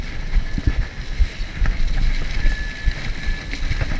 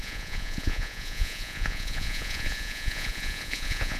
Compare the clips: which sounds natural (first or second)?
first